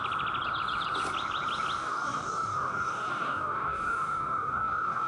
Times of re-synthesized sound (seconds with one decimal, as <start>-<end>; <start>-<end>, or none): 1.8-5.1